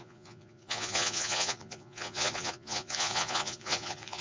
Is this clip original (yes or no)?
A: no